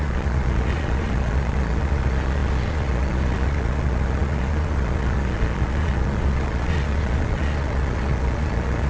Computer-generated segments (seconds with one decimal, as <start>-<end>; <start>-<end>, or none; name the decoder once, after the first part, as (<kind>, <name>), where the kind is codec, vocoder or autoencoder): 0.0-8.9 (vocoder, Vocos)